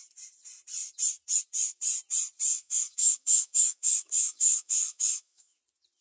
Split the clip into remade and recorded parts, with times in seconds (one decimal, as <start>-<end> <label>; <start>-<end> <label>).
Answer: 0.0-2.5 recorded; 2.5-5.6 remade; 5.6-6.0 recorded

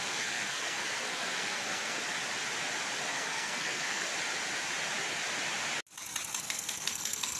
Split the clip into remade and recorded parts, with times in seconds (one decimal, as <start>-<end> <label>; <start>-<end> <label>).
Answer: 0.0-2.0 remade; 2.0-3.1 recorded; 3.1-4.1 remade; 4.1-6.4 recorded; 6.4-7.4 remade

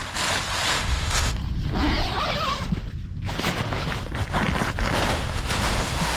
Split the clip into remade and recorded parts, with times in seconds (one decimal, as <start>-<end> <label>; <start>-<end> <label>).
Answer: 0.0-0.7 recorded; 0.7-1.4 remade; 1.4-5.1 recorded; 5.1-6.2 remade